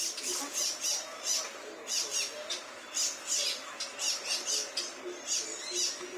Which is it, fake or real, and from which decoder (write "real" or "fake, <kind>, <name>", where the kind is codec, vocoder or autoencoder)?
real